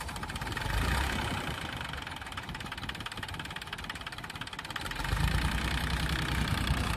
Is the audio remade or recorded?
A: recorded